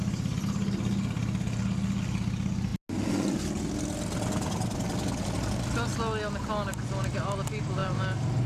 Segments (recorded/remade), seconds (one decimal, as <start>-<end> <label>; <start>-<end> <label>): 0.0-7.8 recorded; 7.8-8.5 remade